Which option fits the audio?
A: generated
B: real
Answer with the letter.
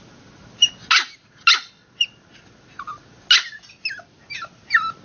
B